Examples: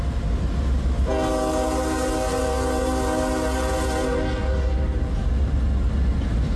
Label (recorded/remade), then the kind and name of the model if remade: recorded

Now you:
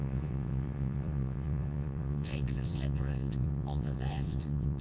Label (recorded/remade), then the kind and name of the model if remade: remade, vocoder, WaveNeXt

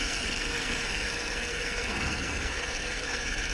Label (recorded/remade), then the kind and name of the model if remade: remade, codec, SNAC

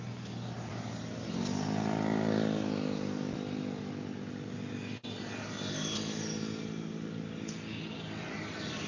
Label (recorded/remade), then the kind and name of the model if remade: recorded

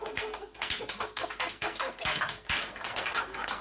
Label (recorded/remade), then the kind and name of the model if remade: remade, codec, SNAC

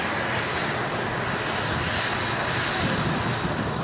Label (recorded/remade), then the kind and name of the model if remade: recorded